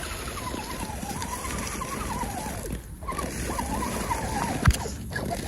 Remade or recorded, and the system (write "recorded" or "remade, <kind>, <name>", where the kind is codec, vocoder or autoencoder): recorded